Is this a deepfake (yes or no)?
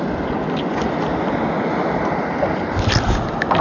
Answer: no